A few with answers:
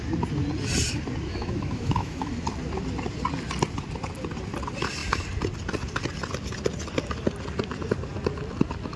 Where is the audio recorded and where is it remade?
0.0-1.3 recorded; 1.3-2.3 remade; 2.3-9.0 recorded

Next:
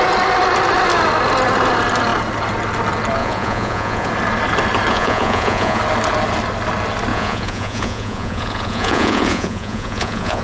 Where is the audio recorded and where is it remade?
0.0-3.2 recorded; 3.2-4.1 remade; 4.1-4.9 recorded; 4.9-5.8 remade; 5.8-7.1 recorded; 7.1-10.4 remade